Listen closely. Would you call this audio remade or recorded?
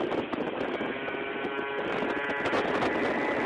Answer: recorded